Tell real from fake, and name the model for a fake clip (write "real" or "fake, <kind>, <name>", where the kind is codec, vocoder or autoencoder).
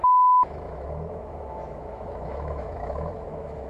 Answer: fake, autoencoder, DAC-VAE